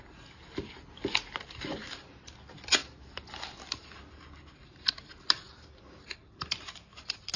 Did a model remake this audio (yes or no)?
no